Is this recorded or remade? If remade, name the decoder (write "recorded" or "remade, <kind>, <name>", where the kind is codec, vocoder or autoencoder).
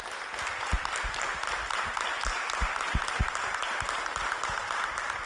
recorded